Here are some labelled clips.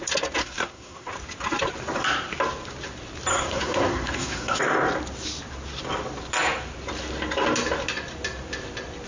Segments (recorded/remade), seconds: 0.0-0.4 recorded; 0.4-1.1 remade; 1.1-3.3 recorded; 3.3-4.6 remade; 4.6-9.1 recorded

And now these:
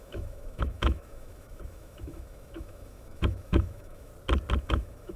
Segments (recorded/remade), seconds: 0.0-4.1 remade; 4.1-4.6 recorded; 4.6-5.2 remade

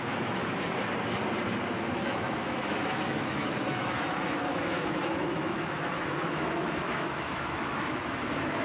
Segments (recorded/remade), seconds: 0.0-0.8 remade; 0.8-1.7 recorded; 1.7-8.6 remade

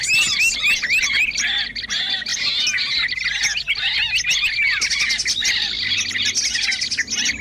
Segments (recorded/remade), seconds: 0.0-7.4 recorded

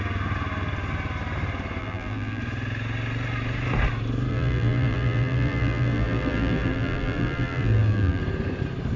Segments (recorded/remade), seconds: 0.0-1.8 recorded; 1.8-2.4 remade; 2.4-4.3 recorded; 4.3-8.2 remade; 8.2-9.0 recorded

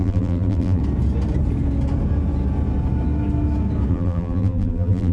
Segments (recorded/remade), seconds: 0.0-0.8 remade; 0.8-3.9 recorded; 3.9-5.1 remade